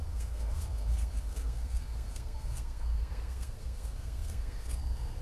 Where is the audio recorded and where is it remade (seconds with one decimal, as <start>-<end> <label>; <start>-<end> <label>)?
0.0-5.2 remade